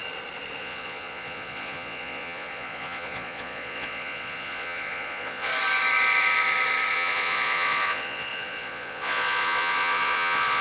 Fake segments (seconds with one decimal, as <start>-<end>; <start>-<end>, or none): 0.6-5.5; 6.9-10.6